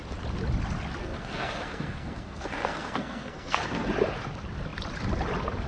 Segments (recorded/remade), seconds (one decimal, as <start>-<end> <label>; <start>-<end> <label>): 0.0-1.0 recorded; 1.0-3.9 remade; 3.9-5.7 recorded